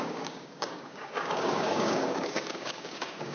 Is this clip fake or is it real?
fake